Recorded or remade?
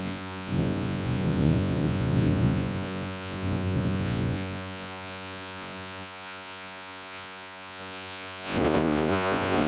remade